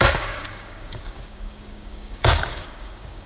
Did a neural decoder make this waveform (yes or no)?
yes